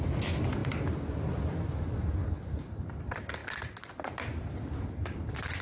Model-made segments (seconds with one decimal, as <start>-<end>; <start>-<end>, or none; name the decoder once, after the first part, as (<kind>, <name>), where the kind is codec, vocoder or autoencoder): none